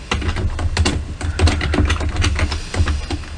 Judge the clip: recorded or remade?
recorded